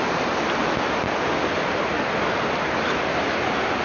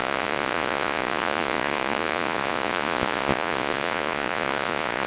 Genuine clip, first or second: first